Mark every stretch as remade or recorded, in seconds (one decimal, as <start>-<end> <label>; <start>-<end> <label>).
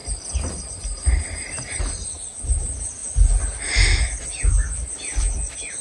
0.0-5.8 recorded